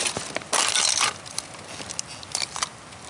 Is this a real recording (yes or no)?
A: yes